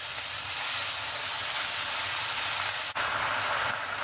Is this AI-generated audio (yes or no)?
no